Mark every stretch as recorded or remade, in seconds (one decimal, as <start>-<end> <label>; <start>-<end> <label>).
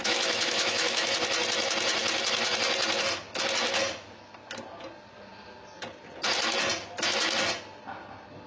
0.0-1.1 remade; 1.1-8.5 recorded